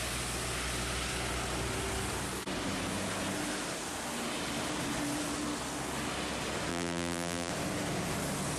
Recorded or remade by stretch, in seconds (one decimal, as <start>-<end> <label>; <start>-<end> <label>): 0.0-6.7 recorded; 6.7-7.5 remade; 7.5-8.6 recorded